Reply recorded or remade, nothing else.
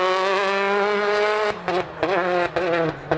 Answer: recorded